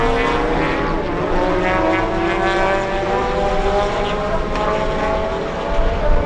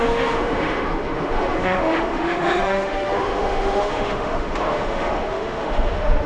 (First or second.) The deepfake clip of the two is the second